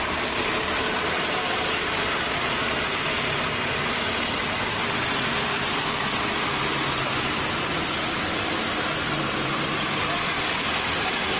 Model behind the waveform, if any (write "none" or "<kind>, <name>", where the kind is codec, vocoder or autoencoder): none